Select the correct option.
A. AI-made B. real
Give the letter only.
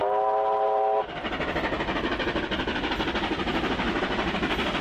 B